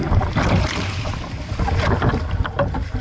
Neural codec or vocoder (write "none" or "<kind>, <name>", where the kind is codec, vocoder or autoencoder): none